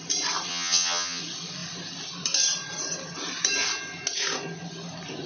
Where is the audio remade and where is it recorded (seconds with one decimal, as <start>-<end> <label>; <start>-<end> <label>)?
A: 0.0-0.5 recorded; 0.5-1.2 remade; 1.2-5.3 recorded